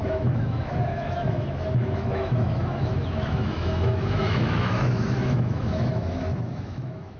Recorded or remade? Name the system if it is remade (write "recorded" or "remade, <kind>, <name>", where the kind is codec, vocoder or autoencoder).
remade, autoencoder, DAC-VAE